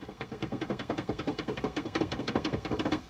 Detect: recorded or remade remade